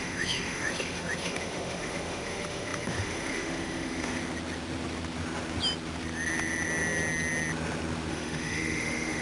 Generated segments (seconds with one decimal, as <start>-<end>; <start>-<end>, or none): 0.0-4.2; 8.1-9.2